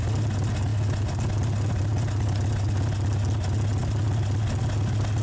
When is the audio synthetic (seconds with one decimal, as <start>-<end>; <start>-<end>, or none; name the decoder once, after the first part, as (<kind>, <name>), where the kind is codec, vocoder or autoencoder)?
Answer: none

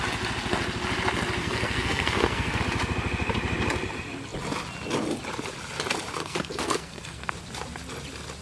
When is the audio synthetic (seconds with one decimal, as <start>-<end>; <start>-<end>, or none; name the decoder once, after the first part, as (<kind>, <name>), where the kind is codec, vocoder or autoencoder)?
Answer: 1.4-2.6 (codec, SNAC); 6.2-7.3